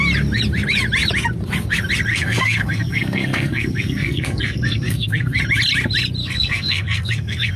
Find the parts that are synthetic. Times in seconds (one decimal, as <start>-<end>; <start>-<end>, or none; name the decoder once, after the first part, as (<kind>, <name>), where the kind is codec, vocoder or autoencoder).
2.1-5.4 (codec, SNAC); 6.2-7.6